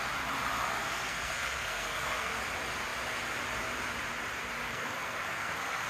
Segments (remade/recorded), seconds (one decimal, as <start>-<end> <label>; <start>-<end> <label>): 0.0-0.8 recorded; 0.8-2.4 remade; 2.4-4.6 recorded; 4.6-5.9 remade